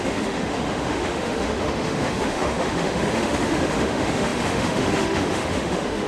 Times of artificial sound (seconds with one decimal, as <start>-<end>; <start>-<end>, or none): 0.0-6.1